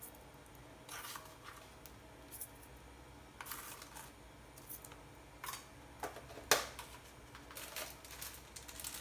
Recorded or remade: recorded